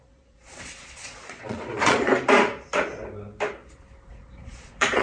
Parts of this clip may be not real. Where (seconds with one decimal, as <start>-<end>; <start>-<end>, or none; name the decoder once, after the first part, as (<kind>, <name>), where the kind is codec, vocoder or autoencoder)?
0.0-2.1 (vocoder, Vocos); 4.1-5.0